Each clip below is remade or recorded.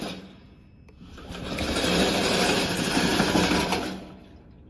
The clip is recorded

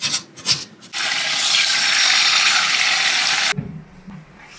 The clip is recorded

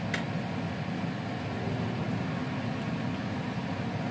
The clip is recorded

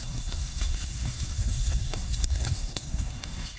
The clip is remade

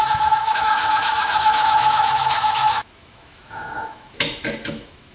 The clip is remade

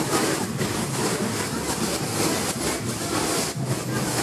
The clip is recorded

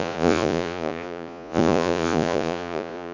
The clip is remade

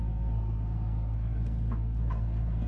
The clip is remade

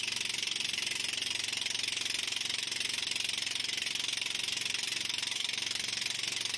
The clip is recorded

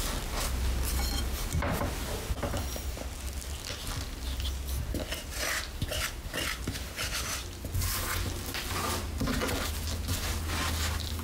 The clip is recorded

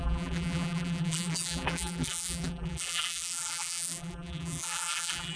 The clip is remade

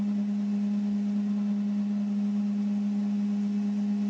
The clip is recorded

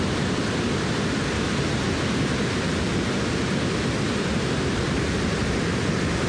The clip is recorded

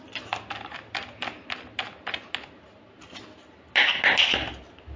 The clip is recorded